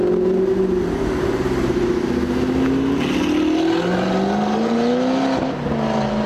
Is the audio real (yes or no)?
yes